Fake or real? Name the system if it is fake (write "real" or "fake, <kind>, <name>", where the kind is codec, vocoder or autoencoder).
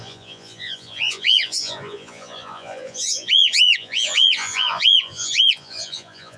fake, vocoder, Vocos